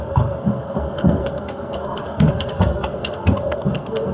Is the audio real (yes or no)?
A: no